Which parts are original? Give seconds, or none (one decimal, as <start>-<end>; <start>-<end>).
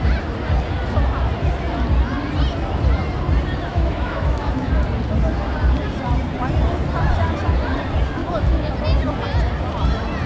0.0-3.7; 4.7-8.2; 8.7-10.3